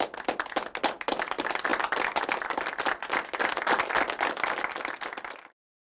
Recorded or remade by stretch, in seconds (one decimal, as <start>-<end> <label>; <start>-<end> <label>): 0.0-5.9 recorded